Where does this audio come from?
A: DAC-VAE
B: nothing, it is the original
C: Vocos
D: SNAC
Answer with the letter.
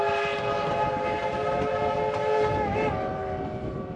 B